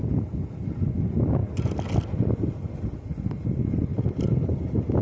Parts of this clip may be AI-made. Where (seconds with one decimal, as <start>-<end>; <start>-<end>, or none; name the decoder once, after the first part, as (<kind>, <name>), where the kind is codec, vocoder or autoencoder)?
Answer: none